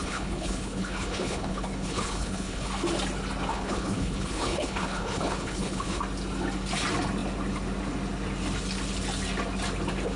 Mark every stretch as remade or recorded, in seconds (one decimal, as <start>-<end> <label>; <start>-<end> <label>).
0.0-2.7 remade; 2.7-3.5 recorded; 3.5-6.0 remade; 6.0-10.2 recorded